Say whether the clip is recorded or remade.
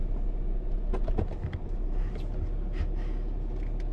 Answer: recorded